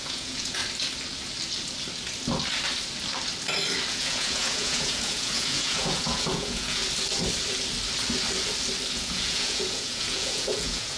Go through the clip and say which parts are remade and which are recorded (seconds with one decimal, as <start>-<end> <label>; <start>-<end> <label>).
0.0-0.6 remade; 0.6-3.9 recorded; 3.9-6.8 remade; 6.8-8.9 recorded; 8.9-11.0 remade